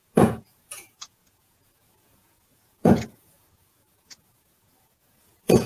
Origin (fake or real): fake